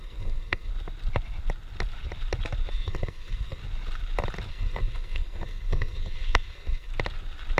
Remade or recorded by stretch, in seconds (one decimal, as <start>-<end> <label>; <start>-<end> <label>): 0.0-0.7 remade; 0.7-2.7 recorded; 2.7-3.6 remade; 3.6-4.5 recorded; 4.5-6.9 remade; 6.9-7.6 recorded